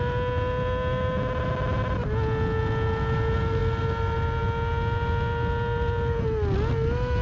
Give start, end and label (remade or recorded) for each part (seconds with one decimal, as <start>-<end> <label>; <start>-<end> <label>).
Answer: 0.0-7.2 recorded